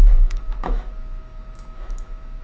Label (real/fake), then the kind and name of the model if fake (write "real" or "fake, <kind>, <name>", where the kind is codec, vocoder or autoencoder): fake, autoencoder, DAC-VAE